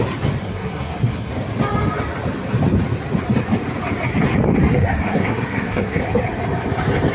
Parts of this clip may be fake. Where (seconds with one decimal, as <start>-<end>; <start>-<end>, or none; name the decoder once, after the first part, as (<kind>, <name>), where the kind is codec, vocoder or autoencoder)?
0.4-1.3 (codec, SNAC); 4.7-6.0